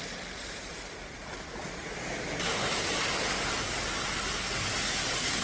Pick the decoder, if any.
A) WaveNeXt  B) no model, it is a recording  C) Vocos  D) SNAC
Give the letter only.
B